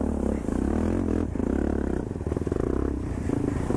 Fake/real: real